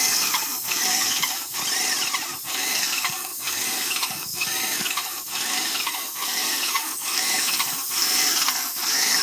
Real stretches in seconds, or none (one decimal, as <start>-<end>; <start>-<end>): 1.6-2.5